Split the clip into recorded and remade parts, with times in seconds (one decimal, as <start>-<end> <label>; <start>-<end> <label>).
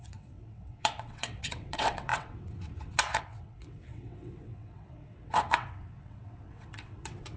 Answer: 0.0-7.4 remade